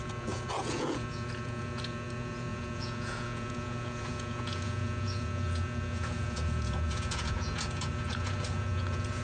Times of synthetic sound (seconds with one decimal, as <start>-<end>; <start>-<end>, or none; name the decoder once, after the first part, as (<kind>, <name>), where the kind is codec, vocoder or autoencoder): 0.0-9.2 (vocoder, Vocos)